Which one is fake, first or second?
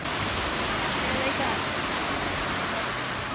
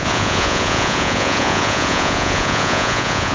second